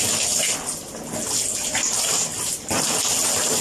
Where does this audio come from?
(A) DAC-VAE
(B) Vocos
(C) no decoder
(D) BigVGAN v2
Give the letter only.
C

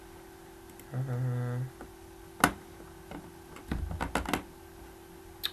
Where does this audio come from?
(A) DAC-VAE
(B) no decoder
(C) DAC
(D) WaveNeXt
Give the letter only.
B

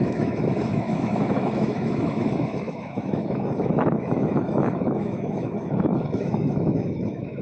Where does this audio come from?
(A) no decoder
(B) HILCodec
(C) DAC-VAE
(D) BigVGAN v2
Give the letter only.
C